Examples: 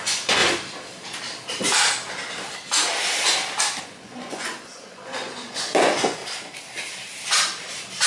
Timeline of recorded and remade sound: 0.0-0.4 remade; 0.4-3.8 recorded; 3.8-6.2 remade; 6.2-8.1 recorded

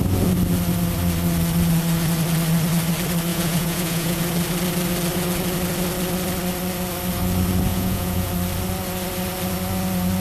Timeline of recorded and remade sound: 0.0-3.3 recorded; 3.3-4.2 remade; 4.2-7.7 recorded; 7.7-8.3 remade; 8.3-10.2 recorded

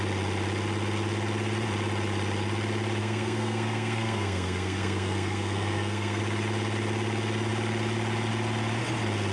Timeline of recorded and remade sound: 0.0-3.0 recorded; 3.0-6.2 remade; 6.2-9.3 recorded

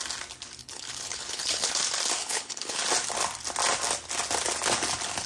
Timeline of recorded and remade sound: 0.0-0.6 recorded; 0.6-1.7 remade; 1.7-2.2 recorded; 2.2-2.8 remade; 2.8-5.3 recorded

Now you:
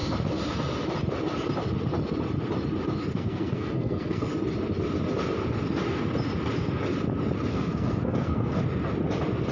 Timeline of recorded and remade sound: 0.0-3.0 recorded; 3.0-4.3 remade; 4.3-7.5 recorded; 7.5-8.6 remade; 8.6-9.5 recorded